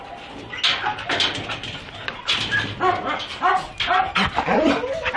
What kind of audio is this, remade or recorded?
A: recorded